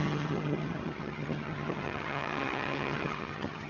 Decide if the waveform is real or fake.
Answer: fake